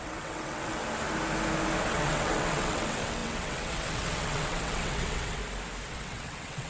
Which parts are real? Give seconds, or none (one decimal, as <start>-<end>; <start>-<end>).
0.8-1.9; 5.4-5.9